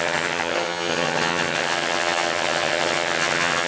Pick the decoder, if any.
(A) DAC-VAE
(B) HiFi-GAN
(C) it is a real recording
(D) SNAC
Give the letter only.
B